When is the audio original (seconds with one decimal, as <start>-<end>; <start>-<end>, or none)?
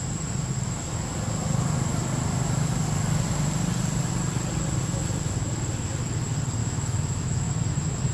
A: 0.0-6.6; 7.5-8.1